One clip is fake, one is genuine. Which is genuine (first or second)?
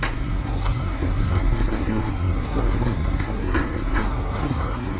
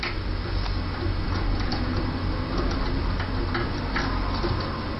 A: second